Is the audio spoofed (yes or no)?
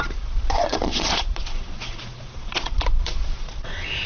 yes